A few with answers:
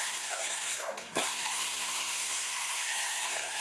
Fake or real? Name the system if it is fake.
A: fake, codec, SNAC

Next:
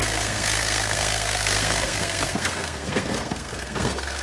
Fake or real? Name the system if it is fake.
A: fake, codec, SNAC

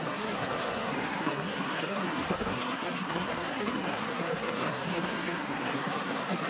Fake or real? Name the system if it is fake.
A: fake, codec, SNAC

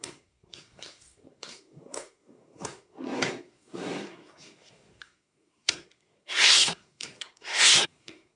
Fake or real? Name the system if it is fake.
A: fake, codec, SNAC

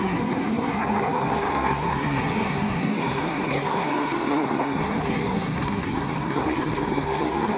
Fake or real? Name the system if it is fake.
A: fake, codec, SNAC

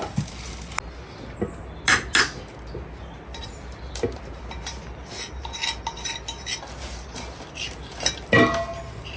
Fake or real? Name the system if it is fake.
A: real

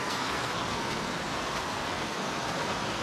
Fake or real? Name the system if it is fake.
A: fake, codec, SNAC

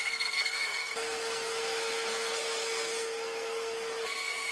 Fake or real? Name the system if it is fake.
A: fake, codec, SNAC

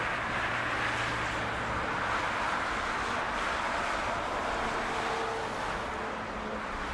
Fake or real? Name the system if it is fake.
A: real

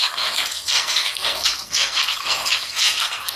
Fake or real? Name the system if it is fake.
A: fake, codec, SNAC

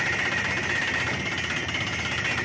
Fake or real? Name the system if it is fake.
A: real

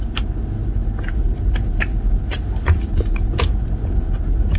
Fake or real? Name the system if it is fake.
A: real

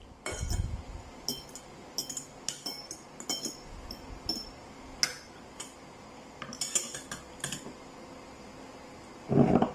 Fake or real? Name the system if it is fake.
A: real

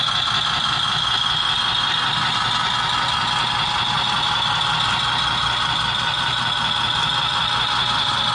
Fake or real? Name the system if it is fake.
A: real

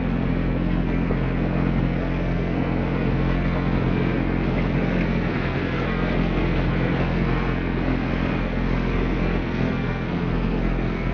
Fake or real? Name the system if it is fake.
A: fake, codec, SNAC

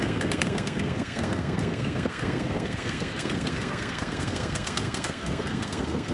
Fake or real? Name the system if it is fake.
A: fake, codec, SNAC